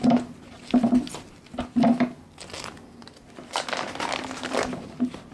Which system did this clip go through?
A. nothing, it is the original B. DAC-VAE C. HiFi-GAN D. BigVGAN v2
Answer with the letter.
A